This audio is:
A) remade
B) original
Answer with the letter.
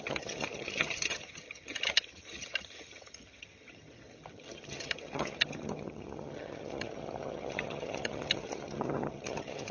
A